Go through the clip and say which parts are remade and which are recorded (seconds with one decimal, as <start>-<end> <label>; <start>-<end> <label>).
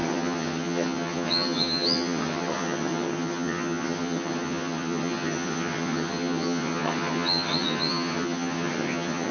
0.0-9.3 remade